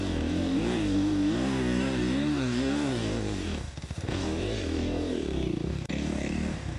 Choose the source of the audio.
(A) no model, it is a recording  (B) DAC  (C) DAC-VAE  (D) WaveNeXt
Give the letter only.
B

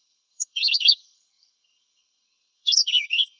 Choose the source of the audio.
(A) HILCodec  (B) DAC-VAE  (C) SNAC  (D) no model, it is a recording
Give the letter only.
C